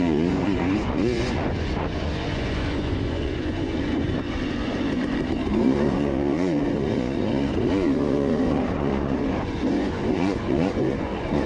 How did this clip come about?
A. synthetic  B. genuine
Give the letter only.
A